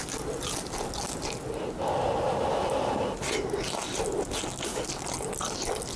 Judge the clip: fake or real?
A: real